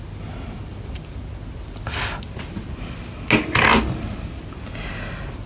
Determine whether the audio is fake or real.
real